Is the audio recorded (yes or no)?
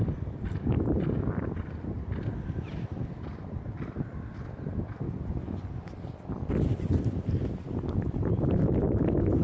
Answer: yes